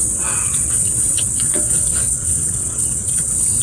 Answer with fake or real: fake